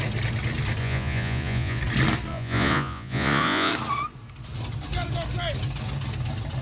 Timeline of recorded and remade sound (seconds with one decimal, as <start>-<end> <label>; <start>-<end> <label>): 0.0-0.8 recorded; 0.8-1.8 remade; 1.8-2.3 recorded; 2.3-3.7 remade; 3.7-6.6 recorded